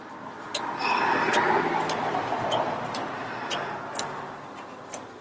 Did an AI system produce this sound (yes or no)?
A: no